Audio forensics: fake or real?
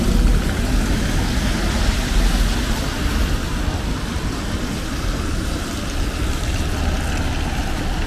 real